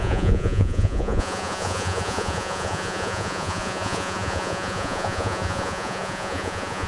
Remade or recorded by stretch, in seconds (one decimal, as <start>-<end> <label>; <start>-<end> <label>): 0.0-6.9 remade